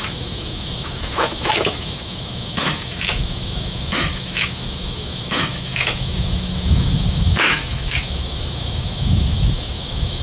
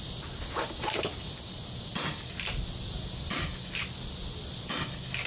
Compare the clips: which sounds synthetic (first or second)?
first